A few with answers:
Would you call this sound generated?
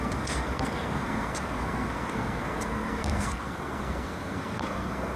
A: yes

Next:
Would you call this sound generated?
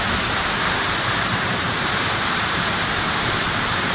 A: yes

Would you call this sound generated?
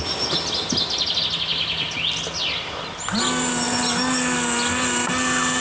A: no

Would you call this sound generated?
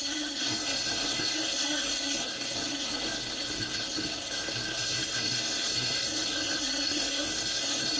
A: yes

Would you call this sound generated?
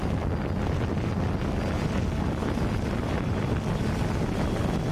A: no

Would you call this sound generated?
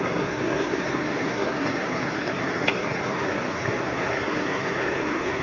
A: yes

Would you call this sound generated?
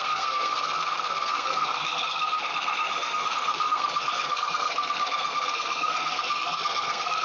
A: yes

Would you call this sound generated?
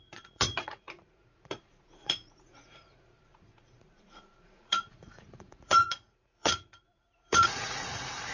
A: yes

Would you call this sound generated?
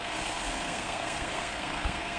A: yes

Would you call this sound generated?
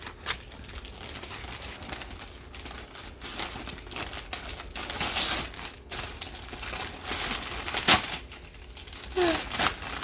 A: no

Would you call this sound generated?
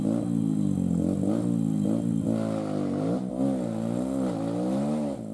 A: no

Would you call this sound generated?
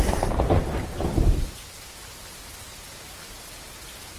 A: no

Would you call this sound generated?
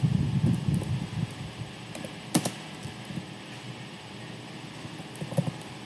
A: no